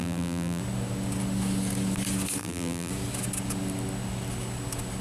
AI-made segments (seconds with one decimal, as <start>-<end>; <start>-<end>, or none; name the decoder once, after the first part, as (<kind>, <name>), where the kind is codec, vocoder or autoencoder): 0.0-0.6 (vocoder, BigVGAN v2); 2.4-2.9

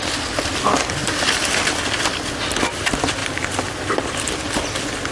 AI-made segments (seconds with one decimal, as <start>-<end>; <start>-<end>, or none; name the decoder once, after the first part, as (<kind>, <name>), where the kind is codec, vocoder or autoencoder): 1.0-2.8 (vocoder, BigVGAN v2); 3.2-4.6

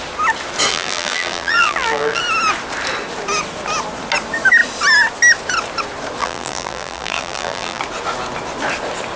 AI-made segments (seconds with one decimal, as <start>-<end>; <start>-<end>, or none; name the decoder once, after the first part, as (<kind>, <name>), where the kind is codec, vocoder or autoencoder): 0.7-2.2 (vocoder, BigVGAN v2); 6.2-7.8

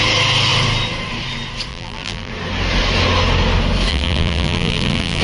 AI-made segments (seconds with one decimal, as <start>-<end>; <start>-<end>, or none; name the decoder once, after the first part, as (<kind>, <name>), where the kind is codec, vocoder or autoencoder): 1.7-2.3 (vocoder, BigVGAN v2); 3.9-5.2

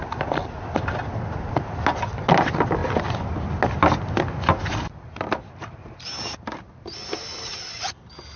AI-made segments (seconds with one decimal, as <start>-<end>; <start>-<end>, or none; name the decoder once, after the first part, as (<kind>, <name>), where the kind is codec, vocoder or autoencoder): none

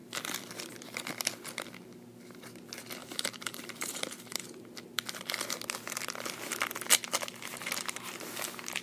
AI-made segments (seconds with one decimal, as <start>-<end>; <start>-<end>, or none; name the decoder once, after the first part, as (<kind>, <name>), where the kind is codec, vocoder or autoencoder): 3.0-4.6 (vocoder, BigVGAN v2)